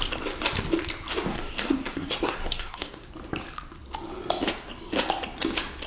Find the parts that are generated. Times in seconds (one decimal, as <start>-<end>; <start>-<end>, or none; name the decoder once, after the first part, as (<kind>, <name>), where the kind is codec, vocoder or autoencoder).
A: 1.3-3.1 (codec, SNAC)